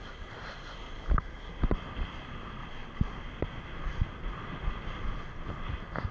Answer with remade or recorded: recorded